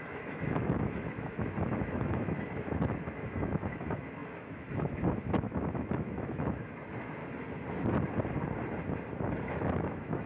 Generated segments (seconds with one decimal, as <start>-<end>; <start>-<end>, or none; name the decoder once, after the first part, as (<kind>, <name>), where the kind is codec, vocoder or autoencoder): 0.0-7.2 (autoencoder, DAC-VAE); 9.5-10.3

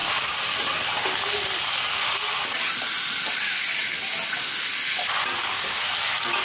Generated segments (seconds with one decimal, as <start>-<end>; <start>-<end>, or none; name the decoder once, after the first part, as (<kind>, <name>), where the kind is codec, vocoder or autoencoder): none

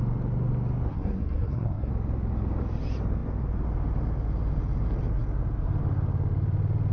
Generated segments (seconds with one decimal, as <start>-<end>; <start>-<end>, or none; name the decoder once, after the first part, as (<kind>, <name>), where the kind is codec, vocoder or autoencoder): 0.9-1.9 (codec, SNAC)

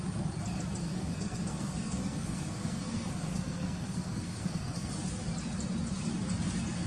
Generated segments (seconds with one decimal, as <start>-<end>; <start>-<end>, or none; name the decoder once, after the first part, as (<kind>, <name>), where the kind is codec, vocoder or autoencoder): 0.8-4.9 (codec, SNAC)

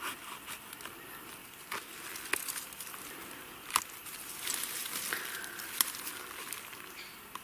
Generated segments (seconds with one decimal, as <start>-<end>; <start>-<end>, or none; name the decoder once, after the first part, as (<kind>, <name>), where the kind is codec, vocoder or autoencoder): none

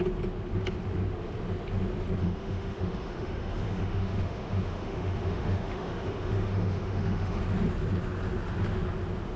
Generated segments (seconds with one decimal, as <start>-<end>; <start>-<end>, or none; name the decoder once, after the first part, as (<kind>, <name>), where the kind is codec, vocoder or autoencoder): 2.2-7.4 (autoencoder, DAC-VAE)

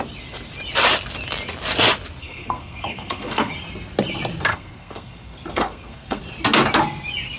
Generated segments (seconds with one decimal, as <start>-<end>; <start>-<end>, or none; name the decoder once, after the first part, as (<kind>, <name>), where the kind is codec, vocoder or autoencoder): 2.2-3.5 (codec, SNAC); 4.5-6.2

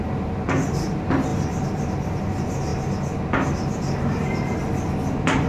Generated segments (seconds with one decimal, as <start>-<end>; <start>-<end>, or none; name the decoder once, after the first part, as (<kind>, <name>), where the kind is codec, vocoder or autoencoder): 1.3-2.2 (vocoder, BigVGAN v2)